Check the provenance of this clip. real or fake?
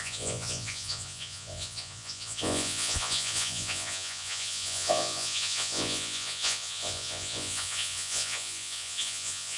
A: fake